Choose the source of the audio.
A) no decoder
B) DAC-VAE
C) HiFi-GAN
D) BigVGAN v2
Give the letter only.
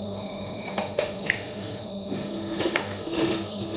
B